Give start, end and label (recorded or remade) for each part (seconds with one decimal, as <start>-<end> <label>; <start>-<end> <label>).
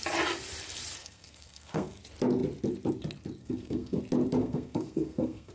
0.0-1.0 recorded; 1.0-2.0 remade; 2.0-3.4 recorded; 3.4-4.0 remade; 4.0-4.4 recorded; 4.4-5.5 remade